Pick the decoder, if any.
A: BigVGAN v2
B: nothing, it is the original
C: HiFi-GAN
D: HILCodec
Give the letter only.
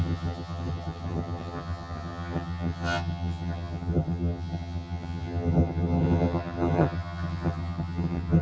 C